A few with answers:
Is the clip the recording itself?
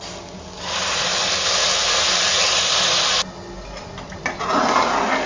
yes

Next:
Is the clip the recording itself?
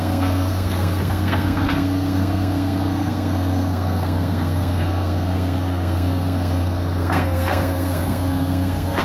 no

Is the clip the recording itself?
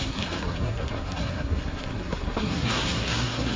no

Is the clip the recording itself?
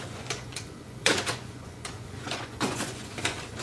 no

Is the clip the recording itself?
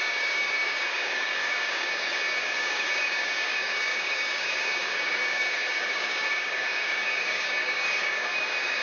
no